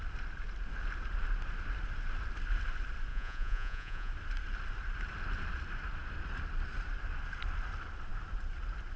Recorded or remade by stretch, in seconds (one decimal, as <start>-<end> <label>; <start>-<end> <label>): 0.0-3.1 recorded; 3.1-4.1 remade; 4.1-9.0 recorded